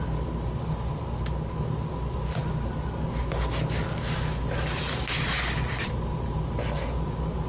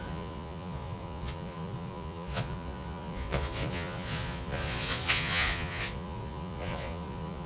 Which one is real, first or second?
first